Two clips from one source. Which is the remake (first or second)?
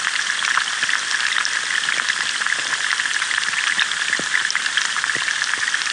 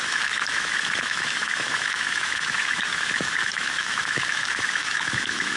second